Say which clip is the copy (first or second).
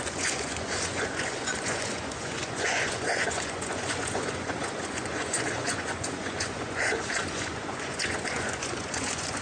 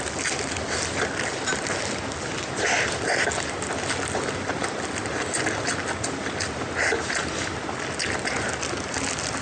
first